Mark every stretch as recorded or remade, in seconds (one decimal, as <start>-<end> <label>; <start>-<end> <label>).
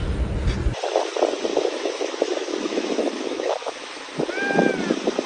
0.0-1.5 recorded; 1.5-4.2 remade; 4.2-5.3 recorded